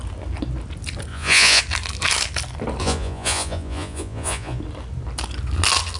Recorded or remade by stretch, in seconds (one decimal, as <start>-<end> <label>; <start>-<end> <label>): 0.0-1.1 recorded; 1.1-1.6 remade; 1.6-2.8 recorded; 2.8-4.6 remade; 4.6-6.0 recorded